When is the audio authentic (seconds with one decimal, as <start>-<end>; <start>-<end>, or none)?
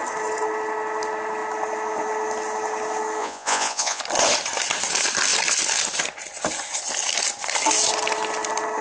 0.0-3.2; 4.0-8.8